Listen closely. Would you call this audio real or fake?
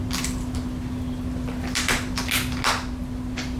real